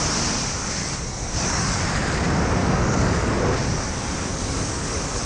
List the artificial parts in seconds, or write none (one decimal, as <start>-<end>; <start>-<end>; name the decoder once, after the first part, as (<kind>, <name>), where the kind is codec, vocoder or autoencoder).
0.8-1.8 (codec, DAC); 2.6-3.3; 4.3-5.3